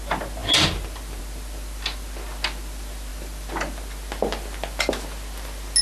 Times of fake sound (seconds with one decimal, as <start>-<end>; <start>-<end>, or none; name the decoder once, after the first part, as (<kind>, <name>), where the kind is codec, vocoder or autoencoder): none